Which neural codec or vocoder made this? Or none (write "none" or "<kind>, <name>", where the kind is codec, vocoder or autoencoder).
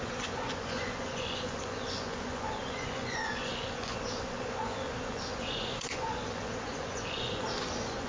vocoder, Vocos